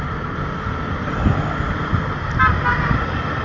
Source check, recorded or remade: recorded